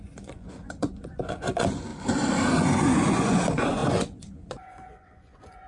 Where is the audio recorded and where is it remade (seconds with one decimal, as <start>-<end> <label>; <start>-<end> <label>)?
0.0-1.9 remade; 1.9-2.5 recorded; 2.5-5.7 remade